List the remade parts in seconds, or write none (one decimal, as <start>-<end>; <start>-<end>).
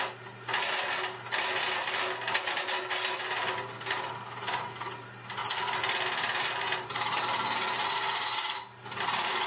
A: none